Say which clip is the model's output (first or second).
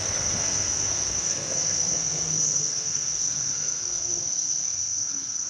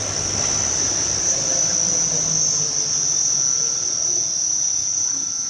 first